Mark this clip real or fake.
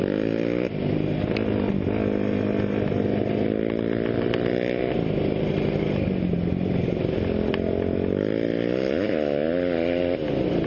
real